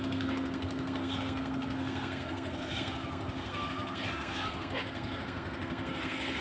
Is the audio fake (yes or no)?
yes